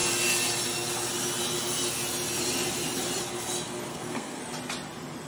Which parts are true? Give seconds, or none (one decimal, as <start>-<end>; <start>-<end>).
0.0-3.9; 4.4-5.3